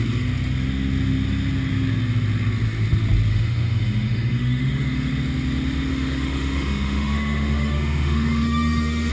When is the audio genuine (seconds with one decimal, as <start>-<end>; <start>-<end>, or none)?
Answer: 0.0-3.3; 5.1-5.9